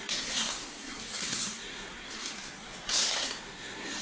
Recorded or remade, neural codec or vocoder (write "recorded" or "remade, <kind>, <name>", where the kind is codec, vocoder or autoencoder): remade, codec, SNAC